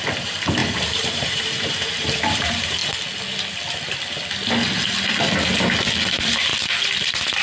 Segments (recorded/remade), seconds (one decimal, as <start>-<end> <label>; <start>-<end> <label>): 0.0-2.8 remade; 2.8-6.1 recorded; 6.1-6.5 remade; 6.5-7.0 recorded; 7.0-7.4 remade

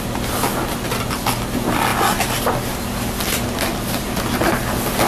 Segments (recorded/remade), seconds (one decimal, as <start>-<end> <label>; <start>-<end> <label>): 0.0-5.1 recorded

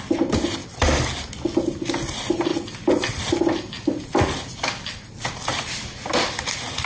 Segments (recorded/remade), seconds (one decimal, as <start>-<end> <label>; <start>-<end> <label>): 0.0-0.6 remade; 0.6-1.6 recorded; 1.6-6.9 remade

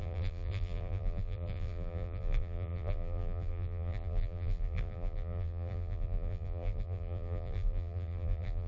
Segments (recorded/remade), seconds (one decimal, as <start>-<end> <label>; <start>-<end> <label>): 0.0-8.7 remade

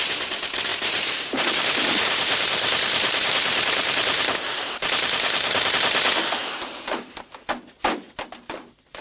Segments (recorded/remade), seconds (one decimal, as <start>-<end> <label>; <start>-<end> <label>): 0.0-0.7 recorded; 0.7-5.7 remade; 5.7-6.4 recorded; 6.4-7.3 remade; 7.3-9.0 recorded

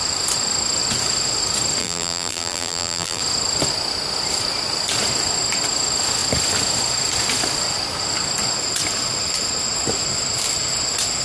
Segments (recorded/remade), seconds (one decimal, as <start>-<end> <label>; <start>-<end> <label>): 0.0-1.8 recorded; 1.8-3.2 remade; 3.2-11.2 recorded

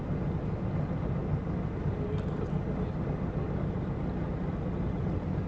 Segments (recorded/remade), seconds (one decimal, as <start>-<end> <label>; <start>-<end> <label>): 0.0-5.5 recorded